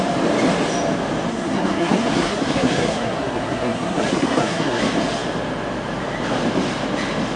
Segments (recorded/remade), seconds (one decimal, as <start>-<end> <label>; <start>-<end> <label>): 0.0-1.3 recorded; 1.3-4.8 remade; 4.8-7.4 recorded